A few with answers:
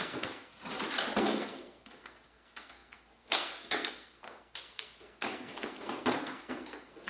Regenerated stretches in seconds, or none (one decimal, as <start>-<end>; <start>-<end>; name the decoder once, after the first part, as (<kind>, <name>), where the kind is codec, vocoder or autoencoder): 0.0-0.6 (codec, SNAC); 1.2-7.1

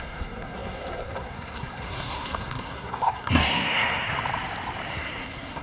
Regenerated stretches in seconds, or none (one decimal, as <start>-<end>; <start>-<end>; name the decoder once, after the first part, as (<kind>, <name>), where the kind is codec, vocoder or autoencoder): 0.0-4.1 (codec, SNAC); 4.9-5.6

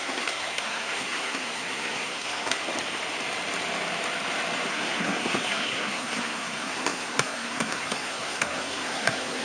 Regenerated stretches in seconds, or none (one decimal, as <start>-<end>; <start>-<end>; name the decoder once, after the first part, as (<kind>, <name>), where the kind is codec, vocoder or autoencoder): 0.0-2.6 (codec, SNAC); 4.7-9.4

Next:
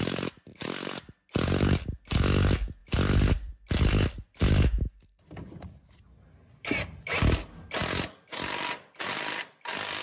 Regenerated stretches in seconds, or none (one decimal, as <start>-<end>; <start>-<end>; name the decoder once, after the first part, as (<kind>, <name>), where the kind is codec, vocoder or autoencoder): none